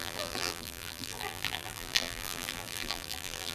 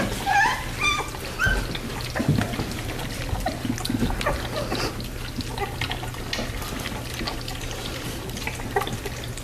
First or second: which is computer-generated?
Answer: first